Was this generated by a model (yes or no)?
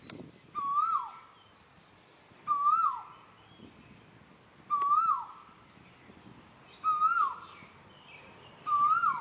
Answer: no